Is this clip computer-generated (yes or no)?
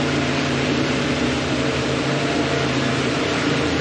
yes